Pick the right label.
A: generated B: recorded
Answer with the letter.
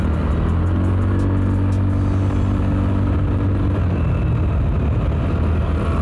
B